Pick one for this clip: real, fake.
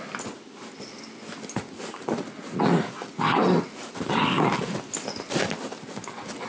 real